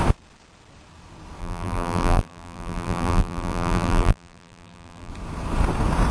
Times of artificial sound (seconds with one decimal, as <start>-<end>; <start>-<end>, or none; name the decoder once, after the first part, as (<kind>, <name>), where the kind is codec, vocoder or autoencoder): 1.4-5.1 (vocoder, BigVGAN v2)